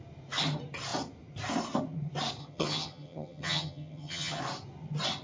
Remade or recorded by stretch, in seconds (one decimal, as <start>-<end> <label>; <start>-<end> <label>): 0.0-2.4 recorded; 2.4-4.4 remade; 4.4-5.2 recorded